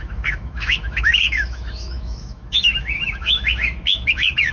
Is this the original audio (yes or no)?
no